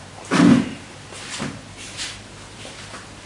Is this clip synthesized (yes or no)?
yes